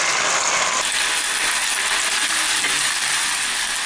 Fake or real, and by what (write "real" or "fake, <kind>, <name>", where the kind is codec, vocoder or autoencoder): real